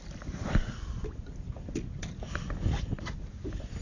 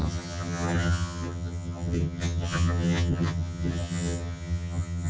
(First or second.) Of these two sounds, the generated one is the second